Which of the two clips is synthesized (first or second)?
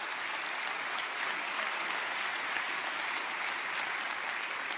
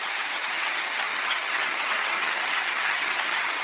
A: second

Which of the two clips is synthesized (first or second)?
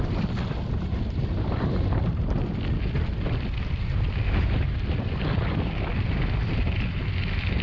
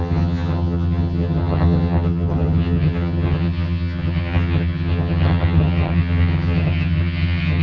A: second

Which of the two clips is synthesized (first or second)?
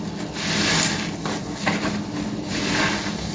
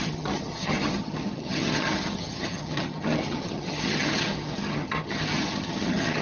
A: second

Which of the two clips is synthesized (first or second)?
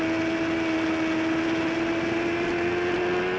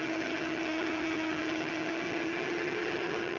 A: second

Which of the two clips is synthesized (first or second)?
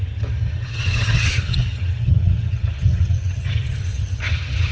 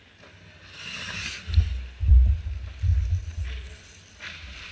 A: first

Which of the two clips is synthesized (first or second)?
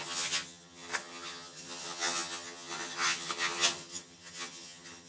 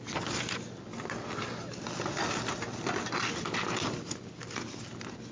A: first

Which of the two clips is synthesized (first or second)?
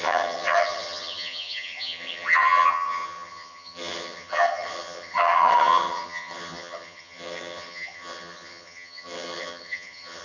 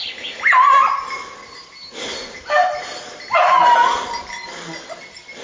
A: first